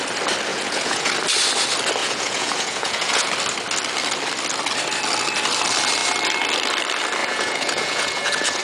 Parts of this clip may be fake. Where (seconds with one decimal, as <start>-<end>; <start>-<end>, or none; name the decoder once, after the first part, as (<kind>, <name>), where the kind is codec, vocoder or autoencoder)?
0.5-1.1 (vocoder, Vocos); 2.0-3.3; 7.2-8.6